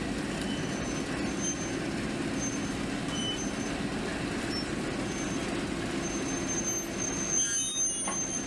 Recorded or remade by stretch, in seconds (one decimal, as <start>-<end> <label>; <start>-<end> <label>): 0.0-8.5 recorded